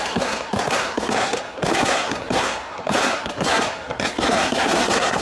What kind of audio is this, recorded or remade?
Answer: remade